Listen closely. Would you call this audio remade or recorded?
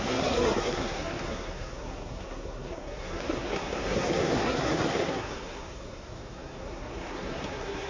remade